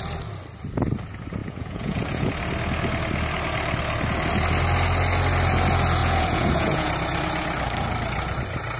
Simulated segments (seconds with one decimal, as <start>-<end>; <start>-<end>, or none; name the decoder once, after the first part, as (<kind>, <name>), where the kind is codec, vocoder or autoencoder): 1.4-2.3 (vocoder, Vocos); 6.0-6.9

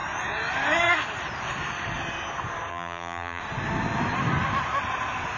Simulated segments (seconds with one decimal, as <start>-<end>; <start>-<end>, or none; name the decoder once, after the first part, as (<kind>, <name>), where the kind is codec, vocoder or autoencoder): 2.7-3.4 (vocoder, BigVGAN v2)

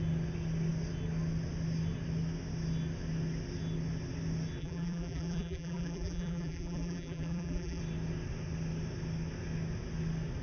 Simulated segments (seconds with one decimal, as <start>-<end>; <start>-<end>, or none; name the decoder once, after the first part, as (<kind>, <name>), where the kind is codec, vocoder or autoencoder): 4.6-7.8 (vocoder, BigVGAN v2)

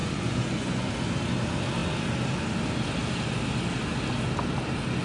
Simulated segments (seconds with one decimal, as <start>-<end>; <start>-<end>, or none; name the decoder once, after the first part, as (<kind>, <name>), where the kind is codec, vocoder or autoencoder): 0.0-0.9 (vocoder, Vocos)

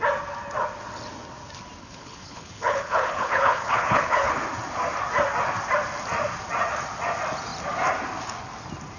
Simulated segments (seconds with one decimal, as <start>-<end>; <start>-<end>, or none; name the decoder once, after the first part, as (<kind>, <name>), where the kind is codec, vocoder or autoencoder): 1.8-4.3 (codec, HILCodec)

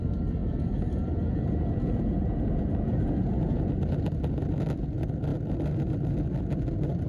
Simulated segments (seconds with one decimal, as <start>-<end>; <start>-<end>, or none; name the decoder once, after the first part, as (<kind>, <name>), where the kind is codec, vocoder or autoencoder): 0.4-3.7 (vocoder, Vocos)